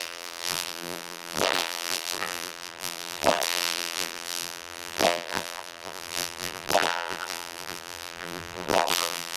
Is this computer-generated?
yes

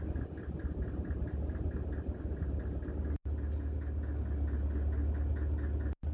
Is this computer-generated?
no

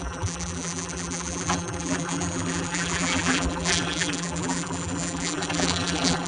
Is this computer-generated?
yes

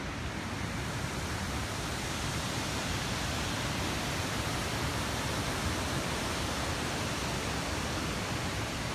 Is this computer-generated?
no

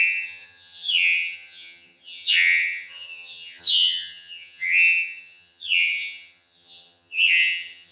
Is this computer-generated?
yes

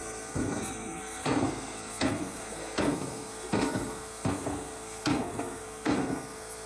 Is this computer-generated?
yes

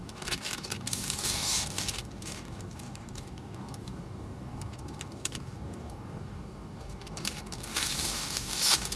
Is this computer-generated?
yes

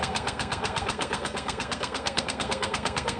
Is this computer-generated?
yes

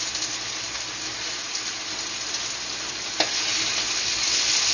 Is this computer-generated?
no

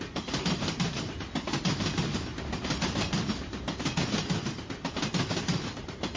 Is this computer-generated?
no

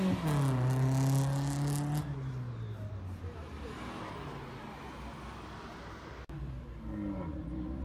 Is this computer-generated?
no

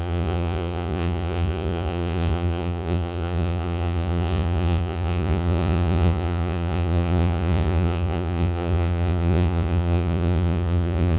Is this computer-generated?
yes